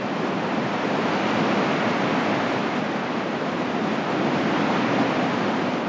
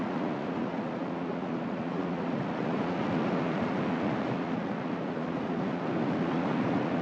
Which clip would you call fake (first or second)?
second